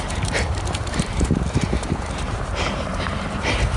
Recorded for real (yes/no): no